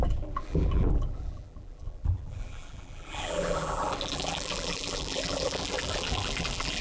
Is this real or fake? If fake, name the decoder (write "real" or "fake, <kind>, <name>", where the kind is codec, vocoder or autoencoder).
fake, vocoder, BigVGAN v2